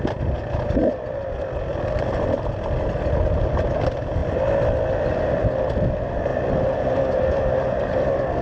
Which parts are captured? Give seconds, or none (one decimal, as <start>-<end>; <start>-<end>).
0.0-8.4